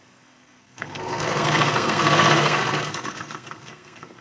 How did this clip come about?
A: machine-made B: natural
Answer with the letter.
A